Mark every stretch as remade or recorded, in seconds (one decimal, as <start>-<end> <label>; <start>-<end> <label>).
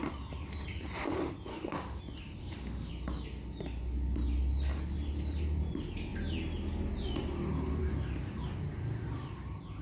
0.0-1.5 recorded; 1.5-2.0 remade; 2.0-2.4 recorded; 2.4-2.9 remade; 2.9-9.8 recorded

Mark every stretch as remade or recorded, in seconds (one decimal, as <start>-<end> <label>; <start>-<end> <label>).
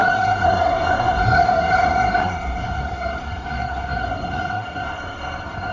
0.0-5.7 remade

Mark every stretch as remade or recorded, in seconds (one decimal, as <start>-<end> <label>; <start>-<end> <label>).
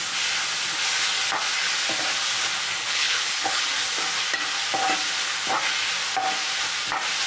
0.0-2.8 recorded; 2.8-3.6 remade; 3.6-7.3 recorded